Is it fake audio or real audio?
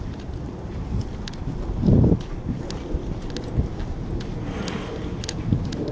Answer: real